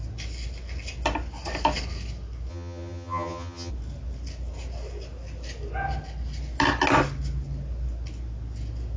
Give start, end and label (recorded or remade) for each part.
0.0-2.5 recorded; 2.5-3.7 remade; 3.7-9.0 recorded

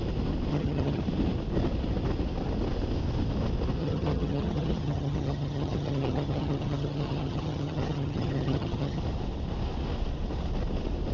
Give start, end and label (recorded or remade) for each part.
0.0-0.5 recorded; 0.5-1.0 remade; 1.0-3.8 recorded; 3.8-9.0 remade; 9.0-11.1 recorded

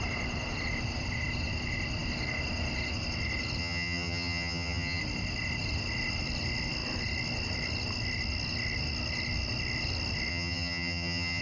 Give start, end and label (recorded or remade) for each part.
0.0-3.6 recorded; 3.6-5.0 remade; 5.0-10.3 recorded; 10.3-11.4 remade

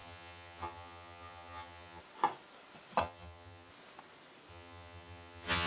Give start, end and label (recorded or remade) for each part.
0.0-2.0 remade; 2.0-3.0 recorded; 3.0-3.7 remade; 3.7-4.5 recorded; 4.5-5.7 remade

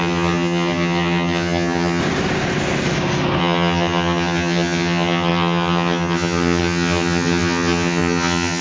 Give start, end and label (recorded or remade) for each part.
0.0-2.0 remade; 2.0-3.4 recorded; 3.4-8.6 remade

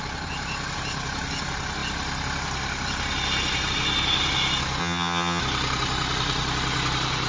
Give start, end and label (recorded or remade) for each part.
0.0-4.8 recorded; 4.8-5.4 remade; 5.4-7.3 recorded

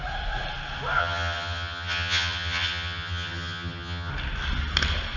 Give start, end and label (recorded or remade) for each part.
0.0-1.0 recorded; 1.0-4.1 remade; 4.1-5.2 recorded

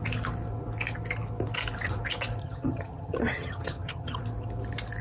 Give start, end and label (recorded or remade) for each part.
0.0-2.4 recorded; 2.4-4.2 remade; 4.2-5.0 recorded